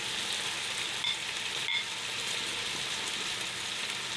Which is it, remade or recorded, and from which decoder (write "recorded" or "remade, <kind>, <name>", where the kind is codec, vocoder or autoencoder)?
recorded